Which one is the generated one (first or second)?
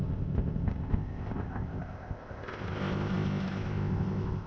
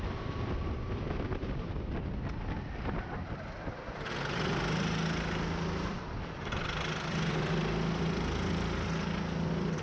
first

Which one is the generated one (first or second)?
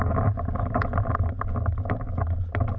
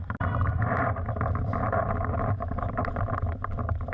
second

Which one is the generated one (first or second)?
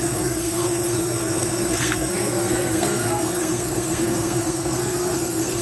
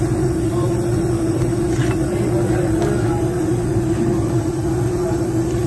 first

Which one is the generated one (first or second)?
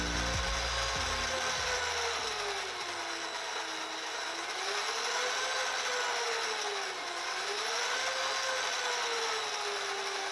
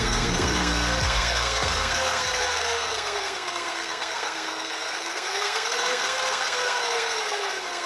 second